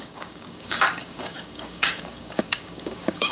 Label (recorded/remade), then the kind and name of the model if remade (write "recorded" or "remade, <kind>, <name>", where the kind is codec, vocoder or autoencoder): remade, codec, DAC